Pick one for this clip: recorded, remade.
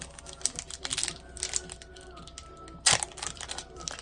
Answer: recorded